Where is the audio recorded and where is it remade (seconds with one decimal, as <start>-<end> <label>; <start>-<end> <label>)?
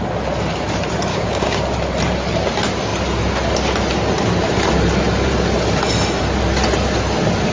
0.0-1.1 recorded; 1.1-1.6 remade; 1.6-7.5 recorded